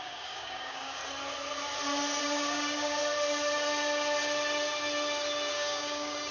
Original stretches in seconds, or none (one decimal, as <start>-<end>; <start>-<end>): 1.0-2.2; 3.0-5.5